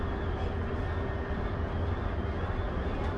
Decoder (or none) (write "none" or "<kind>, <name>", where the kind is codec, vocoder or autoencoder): none